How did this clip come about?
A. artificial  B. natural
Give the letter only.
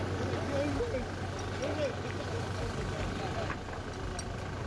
B